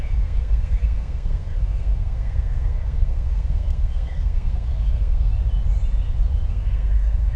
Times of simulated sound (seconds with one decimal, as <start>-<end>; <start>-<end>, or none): 0.0-5.3; 6.5-7.4